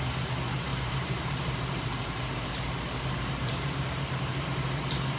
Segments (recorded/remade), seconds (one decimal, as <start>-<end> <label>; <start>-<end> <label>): 0.0-0.7 recorded; 0.7-3.8 remade; 3.8-5.2 recorded